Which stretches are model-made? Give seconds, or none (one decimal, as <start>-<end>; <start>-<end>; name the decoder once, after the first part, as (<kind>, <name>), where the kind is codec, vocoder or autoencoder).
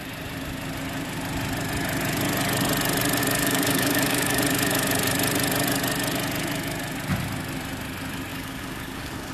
3.4-4.4 (codec, DAC); 8.3-9.3